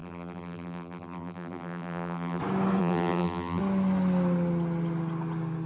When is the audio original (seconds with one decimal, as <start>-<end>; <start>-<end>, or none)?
2.4-2.8; 3.6-5.7